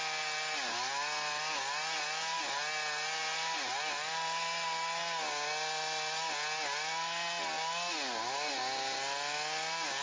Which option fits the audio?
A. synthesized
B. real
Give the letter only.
B